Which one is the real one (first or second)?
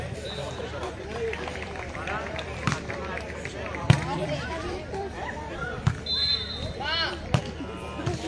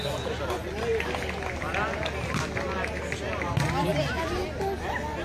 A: second